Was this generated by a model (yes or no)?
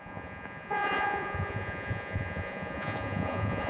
yes